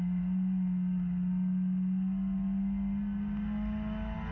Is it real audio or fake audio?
real